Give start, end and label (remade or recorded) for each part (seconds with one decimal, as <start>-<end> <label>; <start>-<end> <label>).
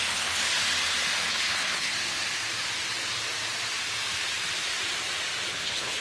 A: 0.0-0.5 remade; 0.5-1.3 recorded; 1.3-1.9 remade; 1.9-5.5 recorded; 5.5-6.0 remade